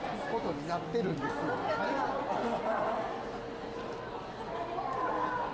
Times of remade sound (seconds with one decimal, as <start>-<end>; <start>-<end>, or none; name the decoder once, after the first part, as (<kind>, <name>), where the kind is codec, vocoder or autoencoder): none